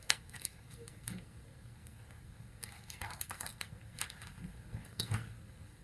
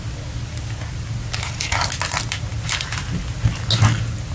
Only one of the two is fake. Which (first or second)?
first